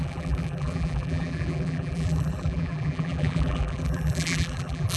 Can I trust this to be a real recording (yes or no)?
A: no